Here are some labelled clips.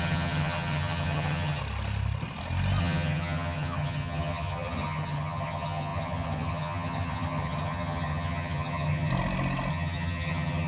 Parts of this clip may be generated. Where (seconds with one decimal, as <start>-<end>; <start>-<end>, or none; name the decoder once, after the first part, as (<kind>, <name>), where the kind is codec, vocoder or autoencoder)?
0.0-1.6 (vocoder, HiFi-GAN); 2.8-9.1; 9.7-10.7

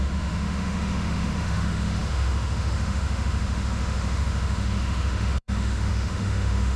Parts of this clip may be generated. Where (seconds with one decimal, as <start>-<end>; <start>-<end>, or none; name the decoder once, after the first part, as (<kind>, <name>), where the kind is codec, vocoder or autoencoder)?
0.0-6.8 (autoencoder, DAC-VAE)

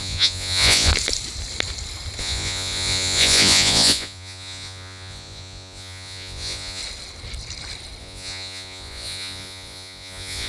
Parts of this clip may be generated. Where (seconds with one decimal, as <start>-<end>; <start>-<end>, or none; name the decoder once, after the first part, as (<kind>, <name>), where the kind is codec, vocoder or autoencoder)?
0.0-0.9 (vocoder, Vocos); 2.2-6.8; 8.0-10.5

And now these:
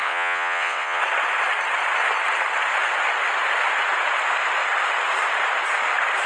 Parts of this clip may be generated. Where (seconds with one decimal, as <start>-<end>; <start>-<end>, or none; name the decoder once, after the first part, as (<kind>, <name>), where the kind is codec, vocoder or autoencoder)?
0.0-1.0 (vocoder, WaveNeXt)

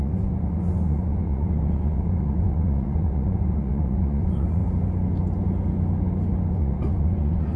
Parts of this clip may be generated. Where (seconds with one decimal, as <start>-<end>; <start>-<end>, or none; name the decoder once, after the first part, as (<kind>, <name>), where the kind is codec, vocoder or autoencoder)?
0.0-4.6 (vocoder, Vocos); 6.5-7.6

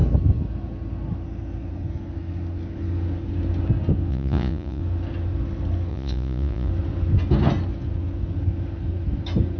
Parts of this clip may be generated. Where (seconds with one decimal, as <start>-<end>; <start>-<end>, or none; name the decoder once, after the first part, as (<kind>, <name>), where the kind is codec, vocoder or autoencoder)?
4.1-4.8 (vocoder, Vocos); 5.9-6.7

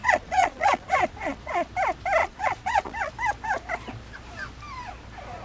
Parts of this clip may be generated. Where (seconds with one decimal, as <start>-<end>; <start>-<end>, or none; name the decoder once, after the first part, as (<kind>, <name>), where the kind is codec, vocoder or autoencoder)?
0.0-1.7 (vocoder, Vocos); 2.2-3.1

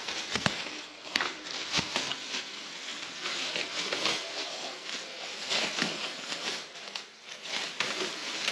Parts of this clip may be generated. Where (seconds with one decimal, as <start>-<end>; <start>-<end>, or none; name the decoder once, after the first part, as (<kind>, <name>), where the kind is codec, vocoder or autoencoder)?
0.0-7.6 (codec, SNAC); 8.1-8.5